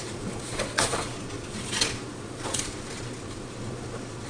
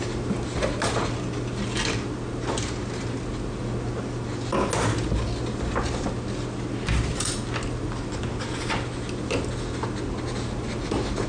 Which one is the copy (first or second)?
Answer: first